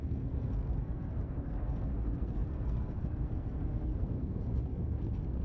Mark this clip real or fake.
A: fake